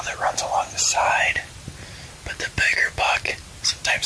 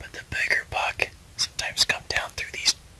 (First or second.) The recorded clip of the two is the second